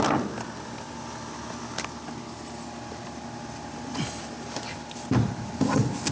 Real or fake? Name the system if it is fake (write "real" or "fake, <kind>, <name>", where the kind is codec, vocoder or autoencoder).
real